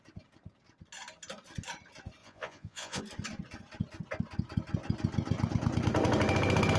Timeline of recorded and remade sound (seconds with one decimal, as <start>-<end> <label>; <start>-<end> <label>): 0.0-2.2 recorded; 2.2-3.0 remade; 3.0-6.8 recorded